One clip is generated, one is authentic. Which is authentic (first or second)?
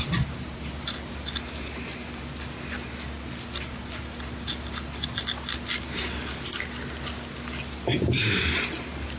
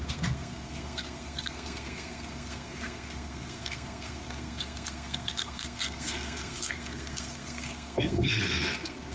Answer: first